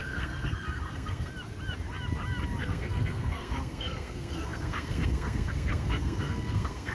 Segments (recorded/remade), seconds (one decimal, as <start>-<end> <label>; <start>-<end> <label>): 0.0-1.3 remade; 1.3-2.6 recorded; 2.6-6.9 remade